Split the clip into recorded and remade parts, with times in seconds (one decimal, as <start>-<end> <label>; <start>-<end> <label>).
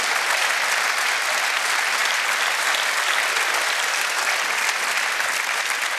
0.0-2.0 recorded; 2.0-5.6 remade; 5.6-6.0 recorded